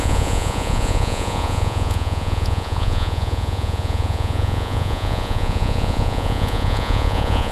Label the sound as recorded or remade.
remade